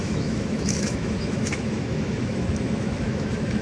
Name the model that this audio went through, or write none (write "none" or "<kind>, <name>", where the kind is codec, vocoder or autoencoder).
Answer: autoencoder, DAC-VAE